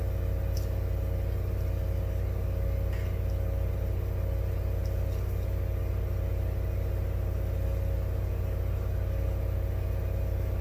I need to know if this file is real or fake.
real